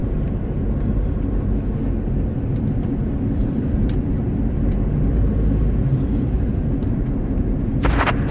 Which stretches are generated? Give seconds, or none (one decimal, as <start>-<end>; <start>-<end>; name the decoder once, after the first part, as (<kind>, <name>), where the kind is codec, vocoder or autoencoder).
0.0-1.1 (vocoder, BigVGAN v2); 3.4-5.2; 5.8-8.3